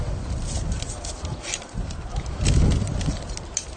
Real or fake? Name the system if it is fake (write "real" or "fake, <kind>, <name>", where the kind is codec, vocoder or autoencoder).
real